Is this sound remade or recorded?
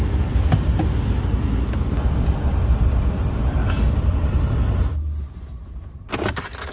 recorded